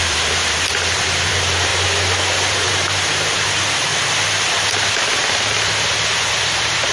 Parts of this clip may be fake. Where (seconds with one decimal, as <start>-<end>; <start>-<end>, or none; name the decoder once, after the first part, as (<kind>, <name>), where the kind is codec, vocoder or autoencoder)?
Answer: 0.0-1.7 (vocoder, BigVGAN v2); 2.5-3.9; 6.1-6.9